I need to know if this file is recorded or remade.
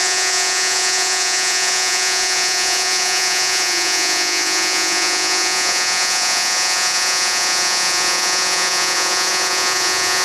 remade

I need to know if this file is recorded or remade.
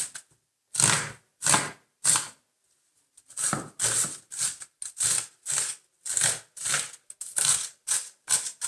recorded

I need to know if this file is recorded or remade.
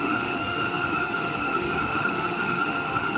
remade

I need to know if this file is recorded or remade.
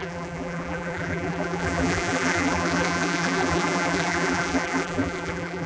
remade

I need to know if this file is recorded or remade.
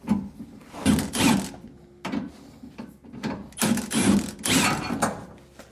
recorded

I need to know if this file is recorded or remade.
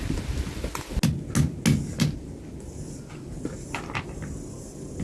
recorded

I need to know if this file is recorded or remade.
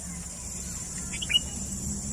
recorded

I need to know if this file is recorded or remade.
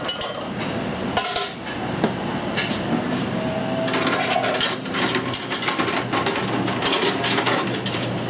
recorded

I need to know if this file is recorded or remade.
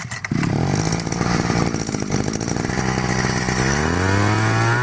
recorded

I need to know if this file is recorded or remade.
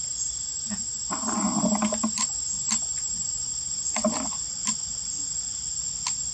recorded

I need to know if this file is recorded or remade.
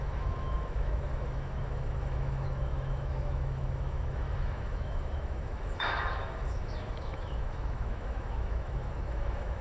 remade